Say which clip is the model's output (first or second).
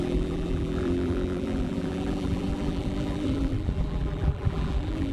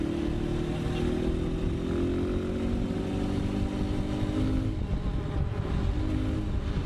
first